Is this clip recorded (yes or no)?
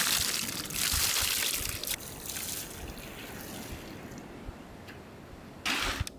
yes